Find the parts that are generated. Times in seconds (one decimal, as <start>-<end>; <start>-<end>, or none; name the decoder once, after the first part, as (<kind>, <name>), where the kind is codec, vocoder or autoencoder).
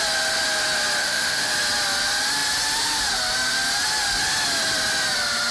1.0-1.5 (autoencoder, DAC-VAE)